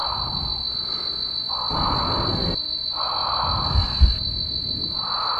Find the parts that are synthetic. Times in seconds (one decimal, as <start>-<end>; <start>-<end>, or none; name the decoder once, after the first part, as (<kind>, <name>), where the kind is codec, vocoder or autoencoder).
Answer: none

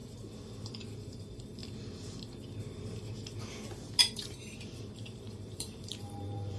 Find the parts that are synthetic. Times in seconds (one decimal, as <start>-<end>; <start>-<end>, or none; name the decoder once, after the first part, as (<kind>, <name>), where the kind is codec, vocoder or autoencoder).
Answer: 0.7-1.6 (vocoder, BigVGAN v2); 4.0-6.6

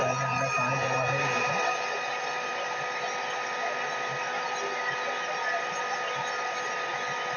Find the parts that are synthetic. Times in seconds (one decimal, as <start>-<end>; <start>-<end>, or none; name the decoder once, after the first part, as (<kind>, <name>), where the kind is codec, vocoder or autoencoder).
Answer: none

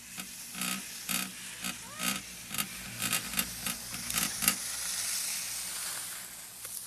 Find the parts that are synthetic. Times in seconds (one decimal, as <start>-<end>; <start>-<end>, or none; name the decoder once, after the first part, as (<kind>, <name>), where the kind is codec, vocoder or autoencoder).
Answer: none

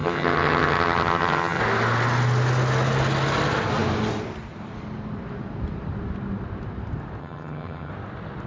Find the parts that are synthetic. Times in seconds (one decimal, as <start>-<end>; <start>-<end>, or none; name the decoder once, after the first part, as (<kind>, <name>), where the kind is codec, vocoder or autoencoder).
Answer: 0.0-1.6 (vocoder, HiFi-GAN); 7.2-7.9